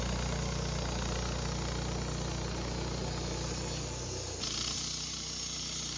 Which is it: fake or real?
real